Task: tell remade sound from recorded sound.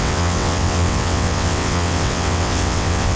remade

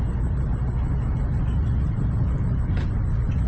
recorded